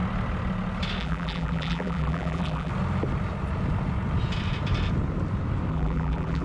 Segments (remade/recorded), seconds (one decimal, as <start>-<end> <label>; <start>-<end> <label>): 0.0-1.0 recorded; 1.0-2.7 remade; 2.7-5.7 recorded; 5.7-6.4 remade